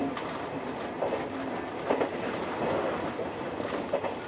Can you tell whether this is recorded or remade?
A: recorded